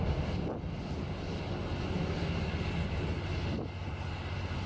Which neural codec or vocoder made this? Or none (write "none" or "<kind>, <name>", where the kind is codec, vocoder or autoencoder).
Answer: none